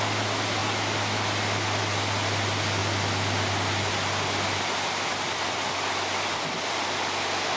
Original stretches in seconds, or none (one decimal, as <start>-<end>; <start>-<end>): 0.0-7.6